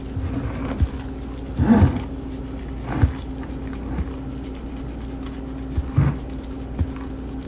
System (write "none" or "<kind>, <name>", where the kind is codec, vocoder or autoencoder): none